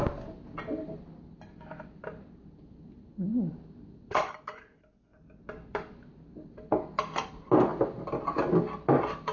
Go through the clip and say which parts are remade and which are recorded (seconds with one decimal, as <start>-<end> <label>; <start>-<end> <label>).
0.0-5.1 recorded; 5.1-5.8 remade; 5.8-9.3 recorded